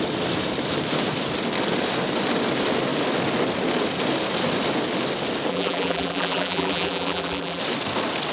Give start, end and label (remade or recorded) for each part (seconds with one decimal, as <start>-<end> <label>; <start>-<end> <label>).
0.0-5.5 recorded; 5.5-7.6 remade; 7.6-8.3 recorded